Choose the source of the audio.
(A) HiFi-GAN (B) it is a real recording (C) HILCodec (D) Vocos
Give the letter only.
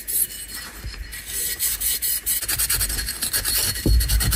B